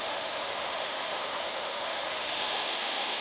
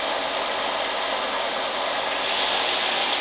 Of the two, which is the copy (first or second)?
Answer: first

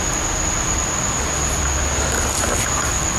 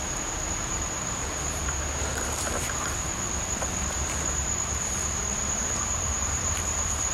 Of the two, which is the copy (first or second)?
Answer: second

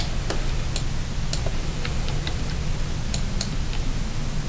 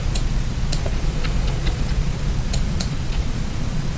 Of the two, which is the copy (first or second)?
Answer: second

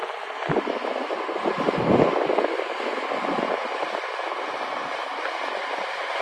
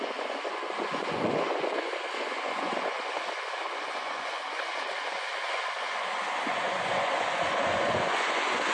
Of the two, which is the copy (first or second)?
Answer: second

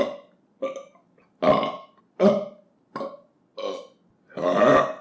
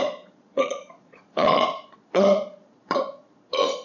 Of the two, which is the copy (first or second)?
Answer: second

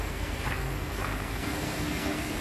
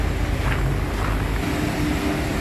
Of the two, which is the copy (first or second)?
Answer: first